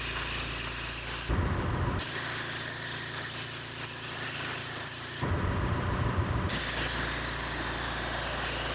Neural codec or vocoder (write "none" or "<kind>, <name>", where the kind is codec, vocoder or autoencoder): none